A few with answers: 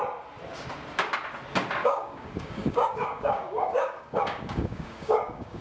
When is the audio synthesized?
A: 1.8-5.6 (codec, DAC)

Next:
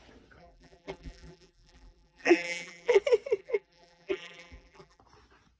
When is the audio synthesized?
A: 0.4-3.0 (vocoder, BigVGAN v2); 3.4-5.0